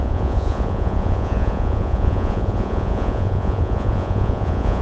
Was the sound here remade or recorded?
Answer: remade